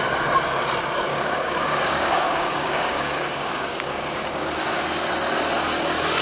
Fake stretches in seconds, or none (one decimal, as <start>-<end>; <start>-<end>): 1.1-4.8